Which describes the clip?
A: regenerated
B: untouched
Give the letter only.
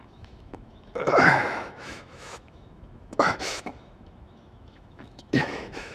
A